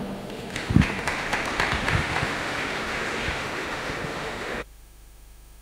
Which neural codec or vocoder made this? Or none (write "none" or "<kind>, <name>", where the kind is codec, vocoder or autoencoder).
autoencoder, DAC-VAE